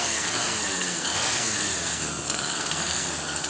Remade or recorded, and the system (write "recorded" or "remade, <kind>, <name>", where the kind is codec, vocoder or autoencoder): remade, codec, SNAC